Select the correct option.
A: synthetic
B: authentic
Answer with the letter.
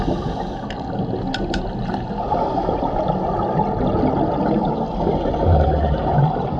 B